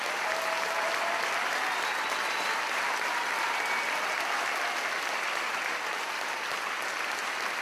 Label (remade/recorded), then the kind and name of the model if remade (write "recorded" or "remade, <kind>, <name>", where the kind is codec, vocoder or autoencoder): recorded